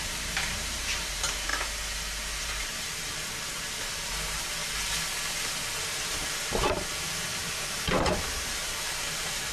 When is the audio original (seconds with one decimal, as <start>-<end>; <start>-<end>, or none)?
1.5-2.4; 4.6-5.8